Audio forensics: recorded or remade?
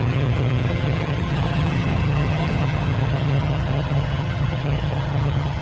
remade